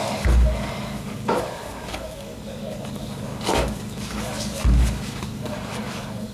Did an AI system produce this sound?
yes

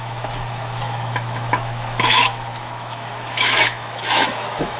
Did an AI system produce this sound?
yes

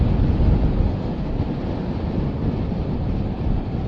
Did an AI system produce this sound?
no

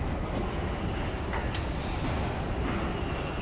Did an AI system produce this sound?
no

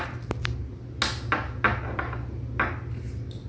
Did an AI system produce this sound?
no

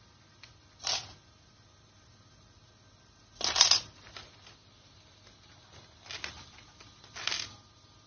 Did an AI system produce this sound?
no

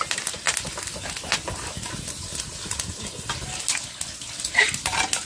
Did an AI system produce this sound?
no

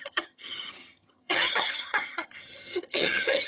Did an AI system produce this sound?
yes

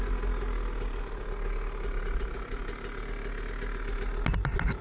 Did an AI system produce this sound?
no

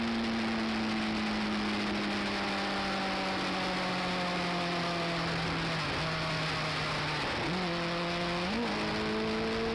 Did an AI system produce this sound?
no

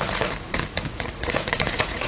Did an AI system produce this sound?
yes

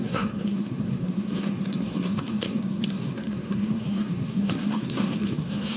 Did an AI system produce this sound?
yes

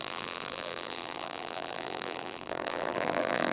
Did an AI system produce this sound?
yes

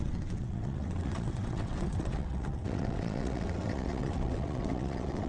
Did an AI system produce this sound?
yes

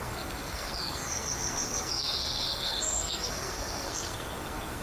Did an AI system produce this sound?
yes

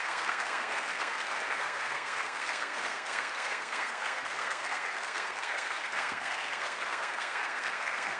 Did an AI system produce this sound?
yes